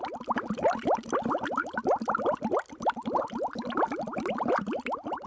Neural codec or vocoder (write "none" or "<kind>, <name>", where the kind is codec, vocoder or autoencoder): none